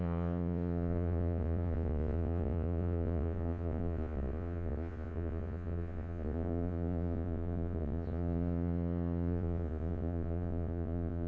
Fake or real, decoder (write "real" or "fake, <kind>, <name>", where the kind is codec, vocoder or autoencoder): fake, vocoder, Vocos